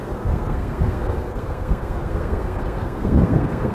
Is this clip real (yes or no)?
no